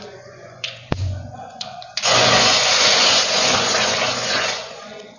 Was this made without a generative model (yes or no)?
no